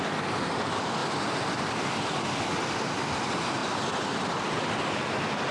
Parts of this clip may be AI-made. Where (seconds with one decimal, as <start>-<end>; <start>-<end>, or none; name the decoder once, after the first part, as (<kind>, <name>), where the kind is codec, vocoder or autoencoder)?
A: 1.0-2.7 (vocoder, BigVGAN v2)